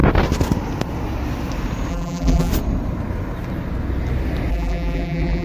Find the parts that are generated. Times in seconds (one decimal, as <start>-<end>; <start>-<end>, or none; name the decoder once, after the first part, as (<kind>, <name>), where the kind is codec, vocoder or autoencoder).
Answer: 1.9-2.5 (vocoder, BigVGAN v2); 4.5-5.4